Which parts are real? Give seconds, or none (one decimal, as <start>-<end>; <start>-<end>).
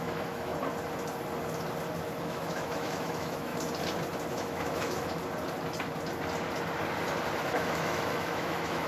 0.5-2.2; 3.5-4.3; 5.2-7.4